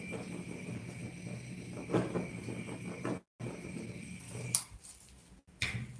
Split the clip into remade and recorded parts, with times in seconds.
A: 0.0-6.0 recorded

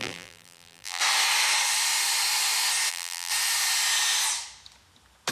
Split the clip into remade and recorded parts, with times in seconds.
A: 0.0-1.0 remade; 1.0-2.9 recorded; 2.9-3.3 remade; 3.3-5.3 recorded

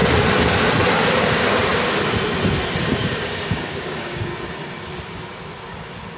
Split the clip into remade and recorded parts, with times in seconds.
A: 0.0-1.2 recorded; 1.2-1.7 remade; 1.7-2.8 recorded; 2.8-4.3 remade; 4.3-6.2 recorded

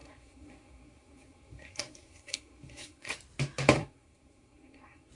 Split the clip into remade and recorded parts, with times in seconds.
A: 0.0-3.1 remade; 3.1-3.8 recorded; 3.8-5.1 remade

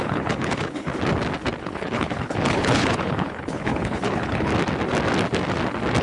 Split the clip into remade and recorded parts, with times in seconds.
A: 0.0-0.9 remade; 0.9-1.6 recorded; 1.6-4.5 remade; 4.5-6.0 recorded

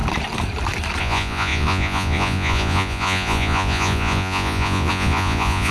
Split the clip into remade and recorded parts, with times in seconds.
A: 0.0-1.0 recorded; 1.0-5.7 remade

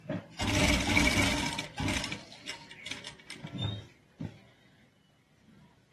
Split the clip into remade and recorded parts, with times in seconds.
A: 0.0-5.9 recorded

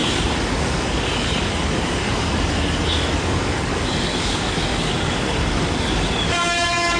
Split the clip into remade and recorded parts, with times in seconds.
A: 0.0-7.0 remade